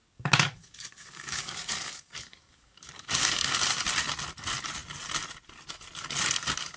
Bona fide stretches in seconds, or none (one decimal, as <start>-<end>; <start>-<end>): 3.6-6.8